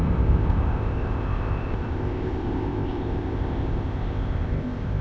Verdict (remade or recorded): remade